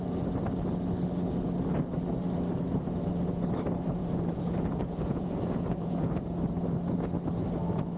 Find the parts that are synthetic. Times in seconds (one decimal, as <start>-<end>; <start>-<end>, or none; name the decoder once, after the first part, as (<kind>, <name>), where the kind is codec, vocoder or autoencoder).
4.0-6.1 (vocoder, Vocos)